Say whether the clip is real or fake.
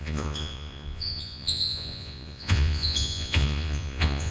fake